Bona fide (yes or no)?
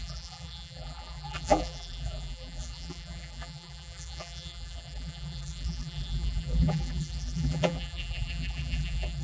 no